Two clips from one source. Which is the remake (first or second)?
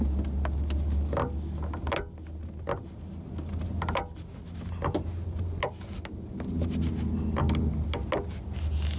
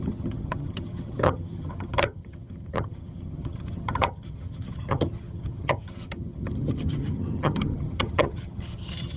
second